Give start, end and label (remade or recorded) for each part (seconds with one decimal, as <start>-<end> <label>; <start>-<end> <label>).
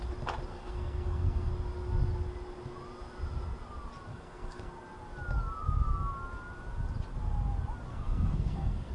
0.0-0.5 recorded; 0.5-1.5 remade; 1.5-4.1 recorded; 4.1-4.7 remade; 4.7-7.9 recorded; 7.9-8.9 remade